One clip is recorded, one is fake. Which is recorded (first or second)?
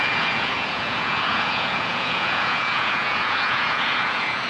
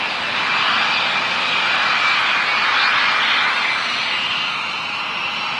second